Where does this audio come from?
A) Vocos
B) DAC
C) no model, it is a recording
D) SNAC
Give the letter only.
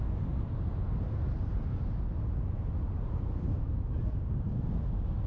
C